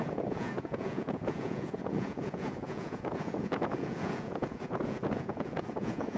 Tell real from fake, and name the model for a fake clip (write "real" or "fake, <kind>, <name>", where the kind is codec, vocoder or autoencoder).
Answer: fake, vocoder, Vocos